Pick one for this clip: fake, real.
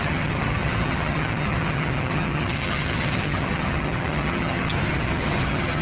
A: fake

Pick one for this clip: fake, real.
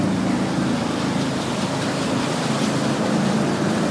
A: real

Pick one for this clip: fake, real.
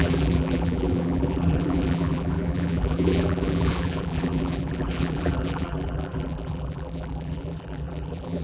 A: fake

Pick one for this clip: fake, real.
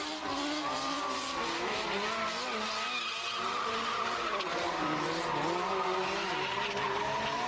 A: real